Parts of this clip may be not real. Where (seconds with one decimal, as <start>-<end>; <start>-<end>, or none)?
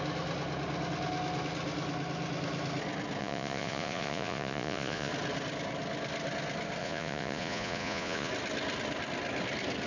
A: 3.2-5.1; 6.8-8.3